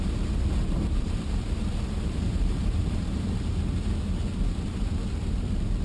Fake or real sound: fake